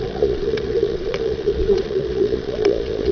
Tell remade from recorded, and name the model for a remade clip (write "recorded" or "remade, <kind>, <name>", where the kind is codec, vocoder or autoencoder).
remade, vocoder, Vocos